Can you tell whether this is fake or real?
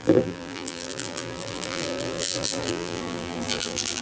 fake